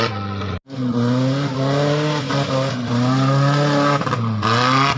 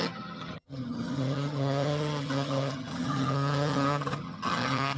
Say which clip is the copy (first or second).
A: second